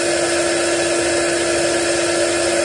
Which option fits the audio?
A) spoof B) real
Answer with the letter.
B